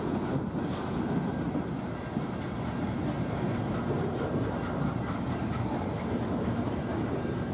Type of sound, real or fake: real